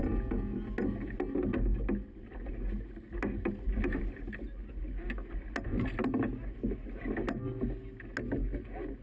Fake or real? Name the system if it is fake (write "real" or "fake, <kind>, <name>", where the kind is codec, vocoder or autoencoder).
real